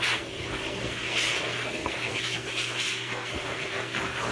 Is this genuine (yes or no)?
no